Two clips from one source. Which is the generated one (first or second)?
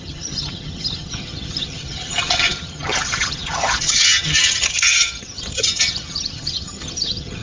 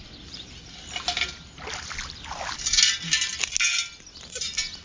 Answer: first